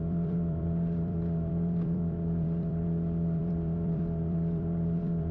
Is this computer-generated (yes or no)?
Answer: yes